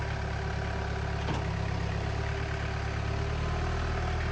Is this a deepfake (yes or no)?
no